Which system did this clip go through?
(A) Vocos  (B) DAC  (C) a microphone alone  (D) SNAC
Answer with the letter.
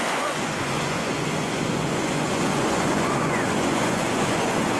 A